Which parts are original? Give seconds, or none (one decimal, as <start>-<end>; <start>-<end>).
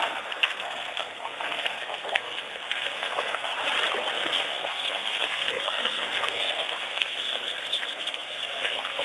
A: 3.5-4.1